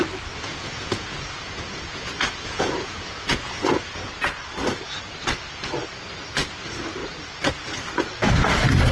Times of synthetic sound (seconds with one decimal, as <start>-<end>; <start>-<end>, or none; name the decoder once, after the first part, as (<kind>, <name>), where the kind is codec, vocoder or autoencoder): 0.5-4.1 (vocoder, Vocos)